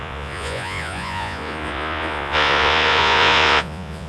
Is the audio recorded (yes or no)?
no